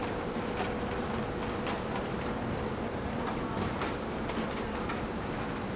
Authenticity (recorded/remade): recorded